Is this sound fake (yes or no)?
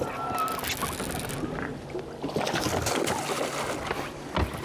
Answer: no